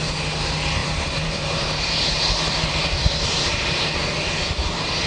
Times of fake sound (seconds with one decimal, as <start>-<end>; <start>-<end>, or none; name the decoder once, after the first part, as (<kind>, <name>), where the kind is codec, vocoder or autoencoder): 0.8-3.8 (vocoder, BigVGAN v2)